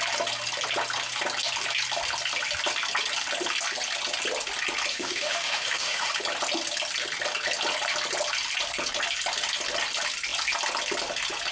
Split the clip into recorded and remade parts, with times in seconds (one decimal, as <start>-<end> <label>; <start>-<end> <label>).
0.0-4.9 recorded; 4.9-6.1 remade; 6.1-11.5 recorded